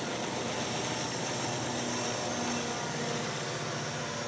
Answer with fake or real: real